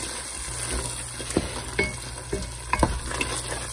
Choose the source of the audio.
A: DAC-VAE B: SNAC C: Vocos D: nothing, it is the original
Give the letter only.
D